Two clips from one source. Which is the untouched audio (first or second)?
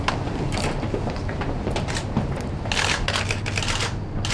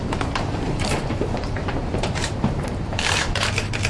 first